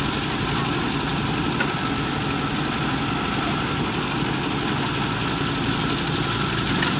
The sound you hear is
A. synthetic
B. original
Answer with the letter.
B